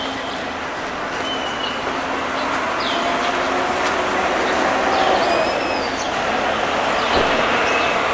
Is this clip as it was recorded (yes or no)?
yes